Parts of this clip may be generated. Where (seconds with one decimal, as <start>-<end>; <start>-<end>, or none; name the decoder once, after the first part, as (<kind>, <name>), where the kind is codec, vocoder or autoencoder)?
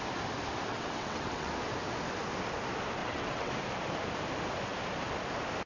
0.7-1.5 (vocoder, WaveNeXt); 3.0-3.5